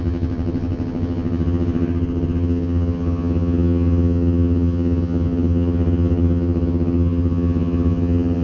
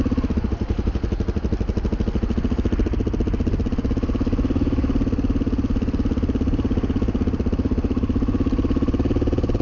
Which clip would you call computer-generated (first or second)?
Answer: first